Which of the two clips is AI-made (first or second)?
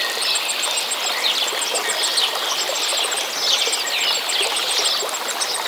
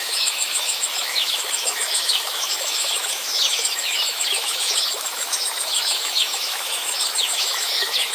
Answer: second